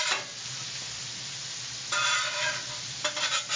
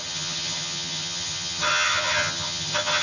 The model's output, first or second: second